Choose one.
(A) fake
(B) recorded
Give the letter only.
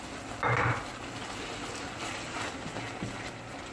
B